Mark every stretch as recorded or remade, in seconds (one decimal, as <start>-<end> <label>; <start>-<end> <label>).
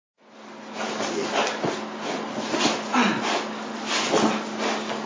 0.0-5.1 recorded